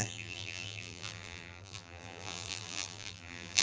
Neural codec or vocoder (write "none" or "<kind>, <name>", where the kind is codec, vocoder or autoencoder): vocoder, BigVGAN v2